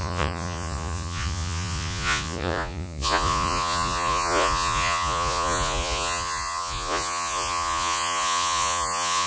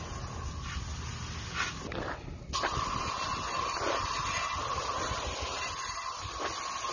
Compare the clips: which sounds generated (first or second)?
first